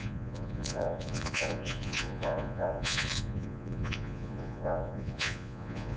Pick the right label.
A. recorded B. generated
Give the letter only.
B